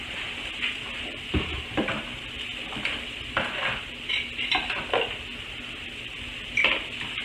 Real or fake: real